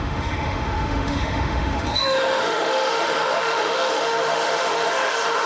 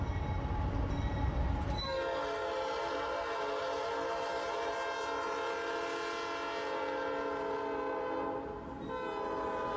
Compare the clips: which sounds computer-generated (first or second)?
first